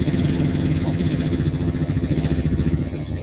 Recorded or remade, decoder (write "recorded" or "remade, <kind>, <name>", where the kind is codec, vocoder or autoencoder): remade, vocoder, HiFi-GAN